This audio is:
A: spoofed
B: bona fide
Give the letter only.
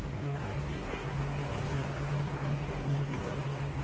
A